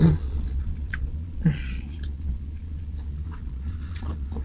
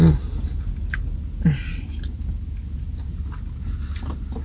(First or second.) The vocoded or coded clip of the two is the first